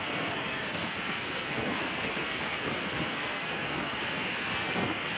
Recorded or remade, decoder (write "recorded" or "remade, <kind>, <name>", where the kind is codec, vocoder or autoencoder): remade, codec, SNAC